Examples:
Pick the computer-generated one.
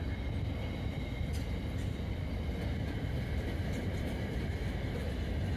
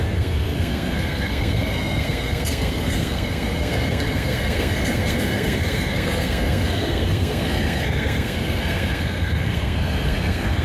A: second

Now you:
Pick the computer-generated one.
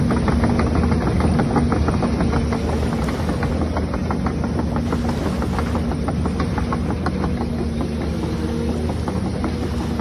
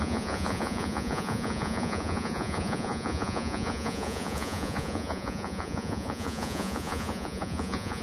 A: second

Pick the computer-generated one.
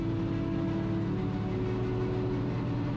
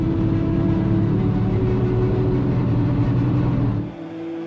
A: second